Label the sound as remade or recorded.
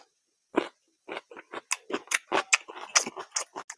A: recorded